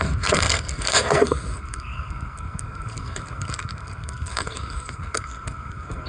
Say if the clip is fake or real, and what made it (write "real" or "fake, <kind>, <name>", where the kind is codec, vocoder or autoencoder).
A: fake, codec, SNAC